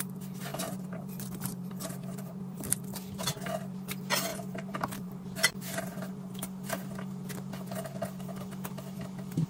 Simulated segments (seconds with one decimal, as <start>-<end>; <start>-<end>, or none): 0.5-2.8; 4.3-6.1